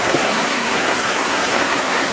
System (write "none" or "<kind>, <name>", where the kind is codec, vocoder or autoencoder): codec, SNAC